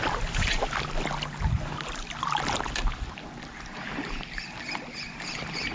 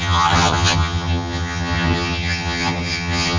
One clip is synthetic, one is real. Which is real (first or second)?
first